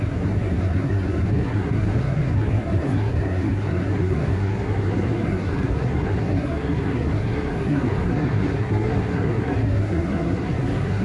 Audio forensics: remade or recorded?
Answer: remade